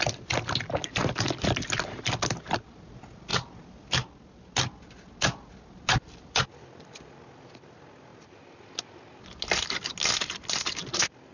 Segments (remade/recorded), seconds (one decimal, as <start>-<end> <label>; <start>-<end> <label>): 0.0-11.3 recorded